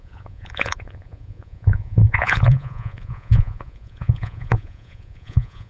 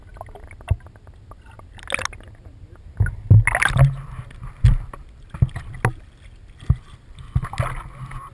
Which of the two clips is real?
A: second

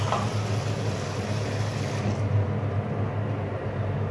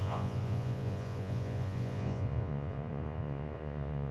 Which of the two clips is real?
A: first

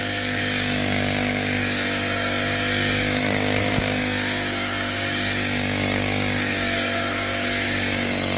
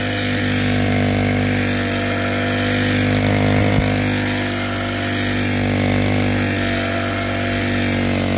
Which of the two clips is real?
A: second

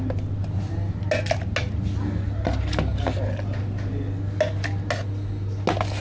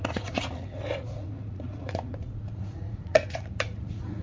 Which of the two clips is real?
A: first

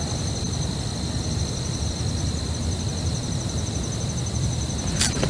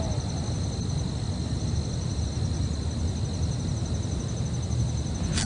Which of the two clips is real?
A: second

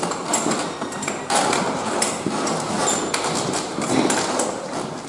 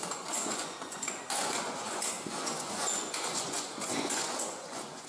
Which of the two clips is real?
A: first